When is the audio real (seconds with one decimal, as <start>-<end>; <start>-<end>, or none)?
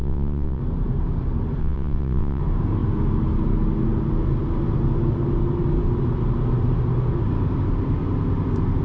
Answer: 0.6-1.6; 2.4-8.8